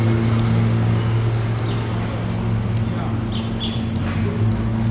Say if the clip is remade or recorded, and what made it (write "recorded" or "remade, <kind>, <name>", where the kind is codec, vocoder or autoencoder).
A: recorded